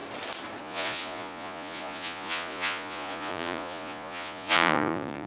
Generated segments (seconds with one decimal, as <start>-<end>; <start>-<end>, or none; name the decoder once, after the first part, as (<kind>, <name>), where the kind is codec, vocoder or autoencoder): 0.6-5.3 (vocoder, Vocos)